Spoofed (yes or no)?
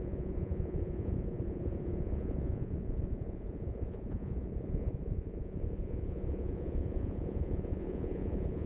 yes